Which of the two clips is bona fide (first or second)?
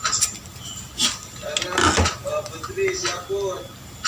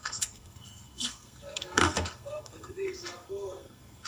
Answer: first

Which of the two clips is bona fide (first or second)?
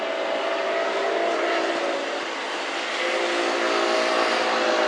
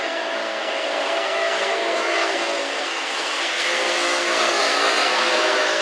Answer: first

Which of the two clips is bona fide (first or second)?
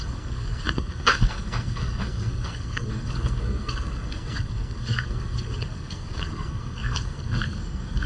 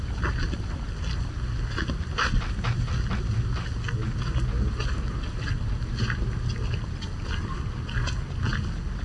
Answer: second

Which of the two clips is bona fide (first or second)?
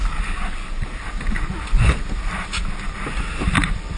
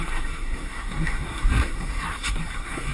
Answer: first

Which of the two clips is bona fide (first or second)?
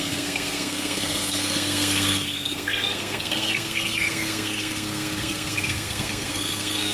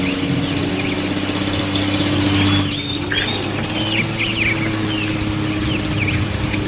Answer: second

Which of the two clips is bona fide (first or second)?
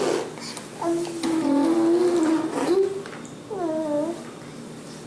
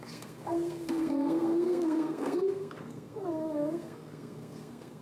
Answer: first